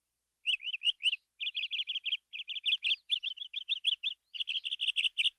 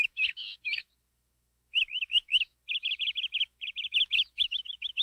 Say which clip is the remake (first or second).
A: second